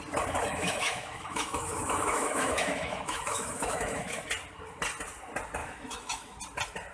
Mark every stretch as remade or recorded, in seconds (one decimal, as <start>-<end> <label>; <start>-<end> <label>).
0.0-0.5 recorded; 0.5-4.2 remade; 4.2-5.6 recorded; 5.6-6.4 remade; 6.4-6.9 recorded